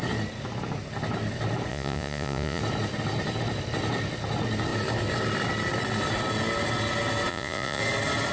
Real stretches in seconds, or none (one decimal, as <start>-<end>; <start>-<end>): 0.0-1.7; 2.6-7.3; 7.8-8.3